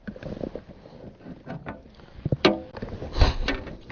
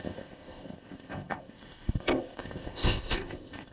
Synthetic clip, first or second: second